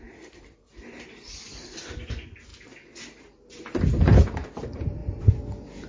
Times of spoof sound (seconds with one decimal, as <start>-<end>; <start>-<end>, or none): 0.0-2.5; 3.2-5.9